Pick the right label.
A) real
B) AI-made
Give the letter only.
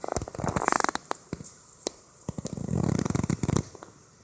A